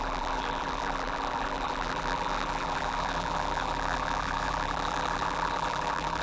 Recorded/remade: remade